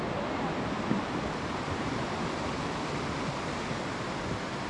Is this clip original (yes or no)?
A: yes